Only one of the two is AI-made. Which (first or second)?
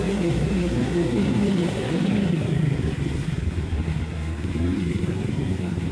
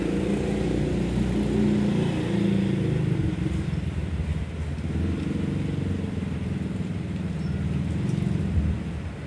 first